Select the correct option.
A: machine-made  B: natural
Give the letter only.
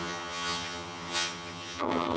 A